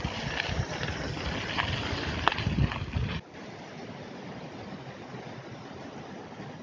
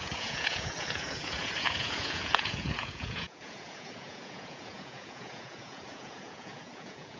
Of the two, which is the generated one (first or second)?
second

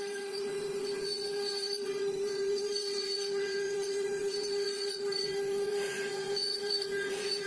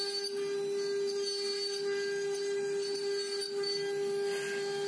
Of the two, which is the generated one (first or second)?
first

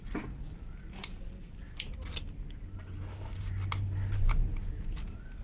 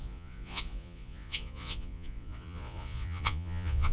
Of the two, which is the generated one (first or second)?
second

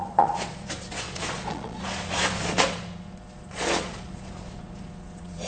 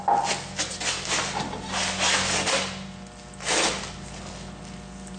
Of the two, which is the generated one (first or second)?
first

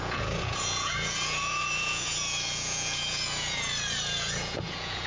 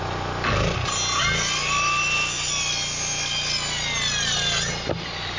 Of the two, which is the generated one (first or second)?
first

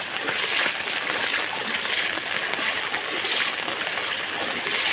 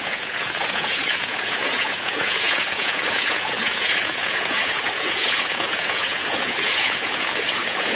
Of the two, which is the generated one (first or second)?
second